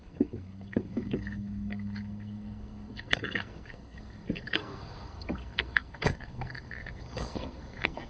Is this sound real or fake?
fake